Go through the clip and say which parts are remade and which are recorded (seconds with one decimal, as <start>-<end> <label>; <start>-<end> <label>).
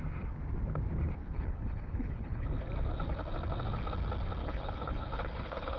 0.0-1.2 recorded; 1.2-2.6 remade; 2.6-4.4 recorded; 4.4-5.8 remade